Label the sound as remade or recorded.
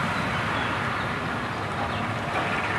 recorded